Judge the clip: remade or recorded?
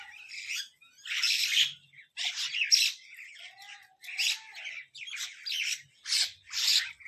recorded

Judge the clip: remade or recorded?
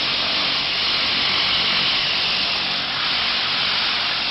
recorded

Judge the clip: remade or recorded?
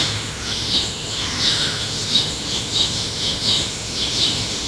remade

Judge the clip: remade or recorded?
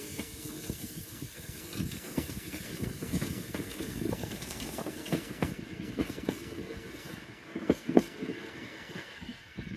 remade